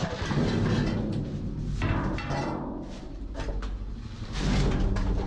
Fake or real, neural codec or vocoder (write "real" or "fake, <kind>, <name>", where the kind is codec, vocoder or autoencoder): real